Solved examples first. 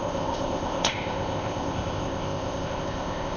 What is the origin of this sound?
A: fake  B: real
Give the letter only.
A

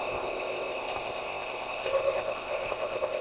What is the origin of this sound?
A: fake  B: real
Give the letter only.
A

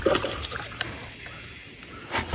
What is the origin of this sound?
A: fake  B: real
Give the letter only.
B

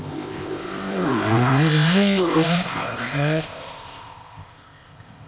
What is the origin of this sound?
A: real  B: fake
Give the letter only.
B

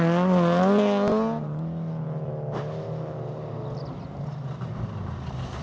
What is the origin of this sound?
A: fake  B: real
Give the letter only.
B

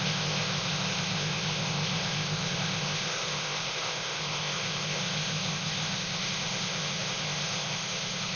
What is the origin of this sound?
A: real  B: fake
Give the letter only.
B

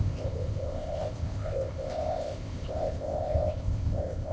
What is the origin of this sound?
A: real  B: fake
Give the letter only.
B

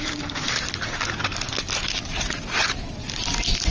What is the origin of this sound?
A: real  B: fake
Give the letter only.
A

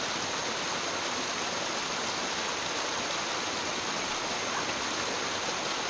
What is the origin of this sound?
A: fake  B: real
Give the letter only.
B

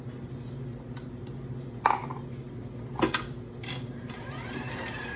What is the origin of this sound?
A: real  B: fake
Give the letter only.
A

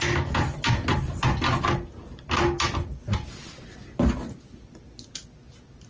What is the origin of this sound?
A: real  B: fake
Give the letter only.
A